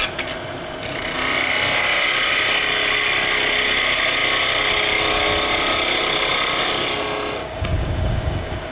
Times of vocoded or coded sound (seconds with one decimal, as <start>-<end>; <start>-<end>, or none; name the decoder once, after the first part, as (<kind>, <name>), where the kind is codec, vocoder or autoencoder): 7.4-8.7 (codec, DAC)